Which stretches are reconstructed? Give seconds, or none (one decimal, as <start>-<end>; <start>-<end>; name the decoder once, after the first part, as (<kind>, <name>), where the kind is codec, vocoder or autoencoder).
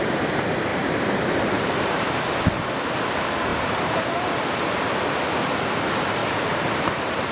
0.7-2.2 (vocoder, BigVGAN v2); 3.5-4.4; 6.2-6.8